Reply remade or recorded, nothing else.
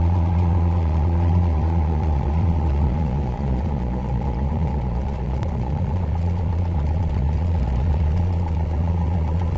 remade